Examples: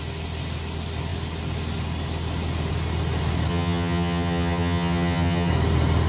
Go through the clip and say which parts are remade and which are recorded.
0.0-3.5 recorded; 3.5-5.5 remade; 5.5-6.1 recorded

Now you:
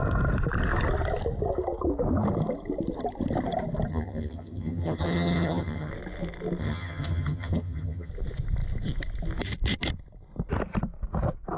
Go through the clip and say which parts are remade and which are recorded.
0.0-3.9 recorded; 3.9-5.9 remade; 5.9-6.6 recorded; 6.6-8.1 remade; 8.1-11.6 recorded

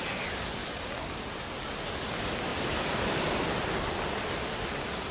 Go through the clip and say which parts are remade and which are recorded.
0.0-5.1 recorded

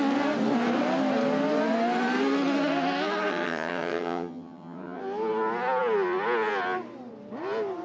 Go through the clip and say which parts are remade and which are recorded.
0.0-3.3 recorded; 3.3-5.0 remade; 5.0-7.8 recorded

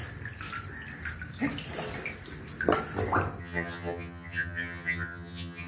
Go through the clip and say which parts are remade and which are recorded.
0.0-3.4 recorded; 3.4-5.7 remade

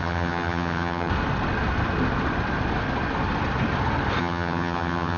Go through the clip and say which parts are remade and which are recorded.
0.0-1.1 remade; 1.1-4.2 recorded; 4.2-5.2 remade